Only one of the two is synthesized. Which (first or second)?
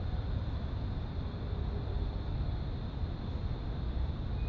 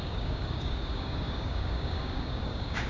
second